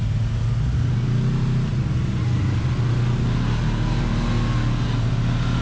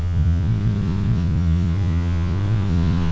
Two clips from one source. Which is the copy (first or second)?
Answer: second